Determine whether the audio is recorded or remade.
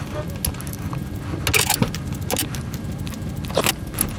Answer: recorded